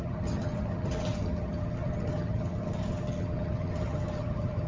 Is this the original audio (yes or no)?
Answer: no